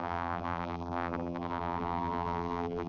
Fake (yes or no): yes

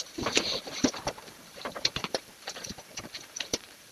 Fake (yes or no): yes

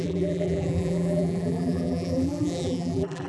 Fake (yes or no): yes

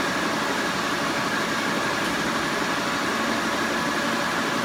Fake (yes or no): no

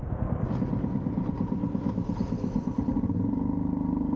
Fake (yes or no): no